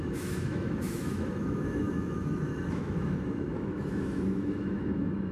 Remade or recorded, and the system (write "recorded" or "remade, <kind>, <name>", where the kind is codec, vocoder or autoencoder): remade, autoencoder, DAC-VAE